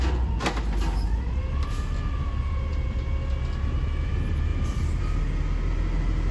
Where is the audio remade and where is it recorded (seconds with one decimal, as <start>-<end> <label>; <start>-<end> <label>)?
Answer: 0.0-4.5 recorded; 4.5-5.2 remade; 5.2-6.3 recorded